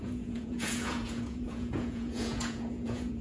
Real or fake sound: fake